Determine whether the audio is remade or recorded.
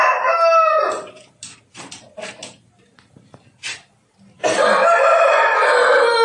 recorded